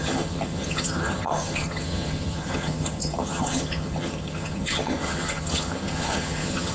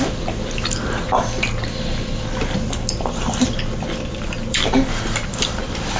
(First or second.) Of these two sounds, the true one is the second